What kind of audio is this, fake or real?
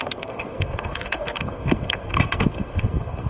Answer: fake